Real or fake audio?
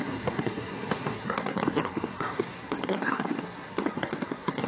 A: fake